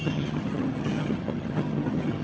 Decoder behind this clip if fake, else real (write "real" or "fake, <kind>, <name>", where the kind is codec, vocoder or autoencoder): fake, vocoder, HiFi-GAN